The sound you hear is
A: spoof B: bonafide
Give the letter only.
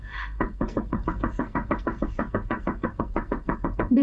A